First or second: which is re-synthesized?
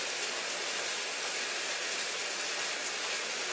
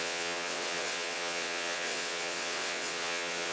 second